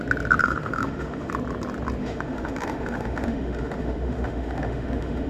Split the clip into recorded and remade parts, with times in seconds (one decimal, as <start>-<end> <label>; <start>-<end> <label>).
0.0-0.4 recorded; 0.4-1.3 remade; 1.3-2.0 recorded; 2.0-5.3 remade